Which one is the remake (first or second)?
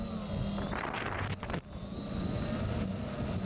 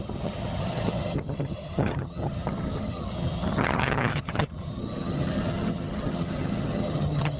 second